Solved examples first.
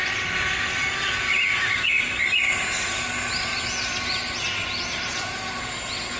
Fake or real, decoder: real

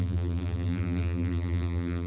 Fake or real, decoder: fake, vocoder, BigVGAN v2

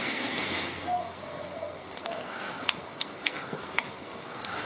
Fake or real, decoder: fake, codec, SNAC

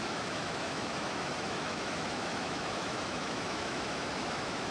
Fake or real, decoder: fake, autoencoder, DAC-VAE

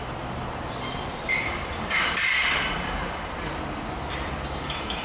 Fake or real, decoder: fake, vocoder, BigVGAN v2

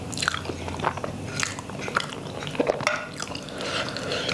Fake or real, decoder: real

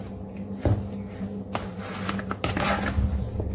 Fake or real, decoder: real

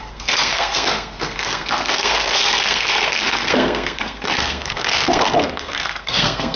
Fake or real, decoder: fake, codec, SNAC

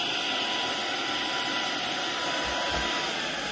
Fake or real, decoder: real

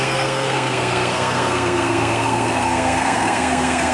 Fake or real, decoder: fake, codec, SNAC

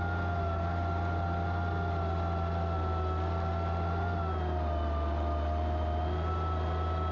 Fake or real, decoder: real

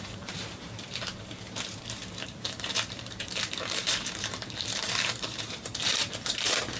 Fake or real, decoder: fake, vocoder, BigVGAN v2